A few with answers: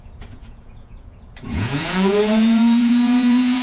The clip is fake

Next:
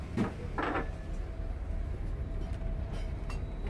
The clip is real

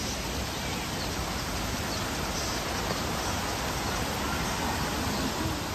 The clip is real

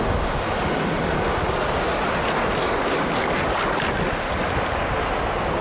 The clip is real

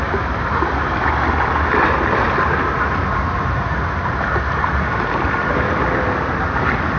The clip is real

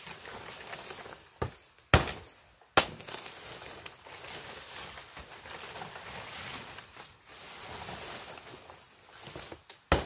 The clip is real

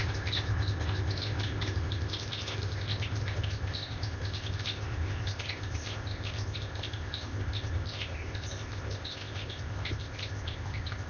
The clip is fake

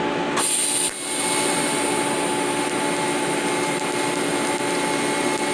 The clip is real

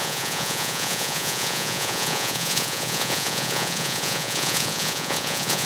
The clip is fake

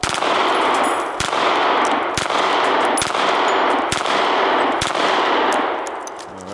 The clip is real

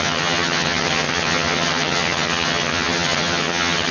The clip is fake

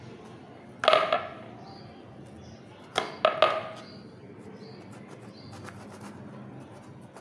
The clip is real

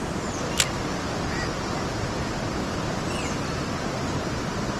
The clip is real